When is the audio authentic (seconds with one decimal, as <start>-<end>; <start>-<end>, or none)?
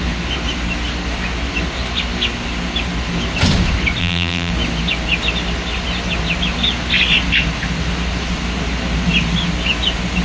0.0-4.0; 4.5-10.2